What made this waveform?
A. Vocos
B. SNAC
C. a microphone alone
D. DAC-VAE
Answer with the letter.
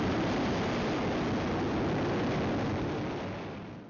C